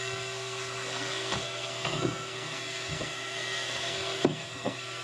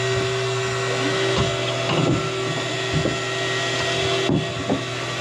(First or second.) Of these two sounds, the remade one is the first